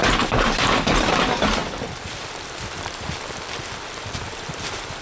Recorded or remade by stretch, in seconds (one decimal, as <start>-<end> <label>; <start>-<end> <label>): 0.0-5.0 remade